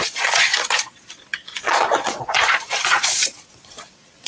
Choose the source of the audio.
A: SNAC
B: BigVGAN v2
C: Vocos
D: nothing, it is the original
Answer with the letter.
C